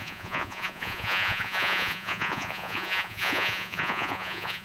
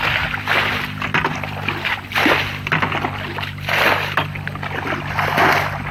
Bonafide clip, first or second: second